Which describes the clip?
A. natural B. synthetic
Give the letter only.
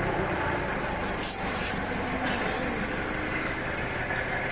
A